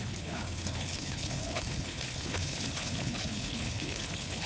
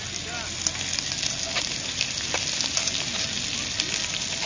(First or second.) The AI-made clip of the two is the first